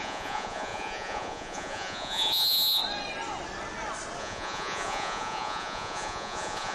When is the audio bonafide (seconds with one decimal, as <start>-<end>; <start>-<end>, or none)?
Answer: 2.8-4.2

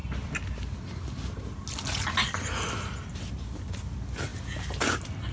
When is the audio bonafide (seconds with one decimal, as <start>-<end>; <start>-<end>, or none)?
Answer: 0.0-5.3

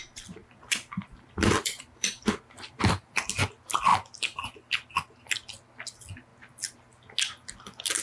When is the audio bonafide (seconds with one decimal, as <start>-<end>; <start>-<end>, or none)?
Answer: 0.0-0.4; 3.1-3.9; 4.7-8.0